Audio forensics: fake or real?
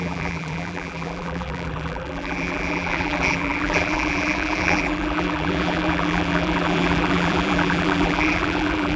fake